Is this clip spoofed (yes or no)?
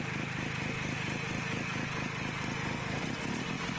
no